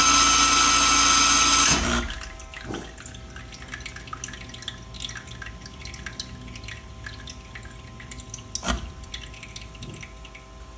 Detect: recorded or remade recorded